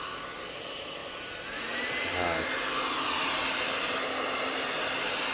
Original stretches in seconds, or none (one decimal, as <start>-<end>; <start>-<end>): 0.0-5.3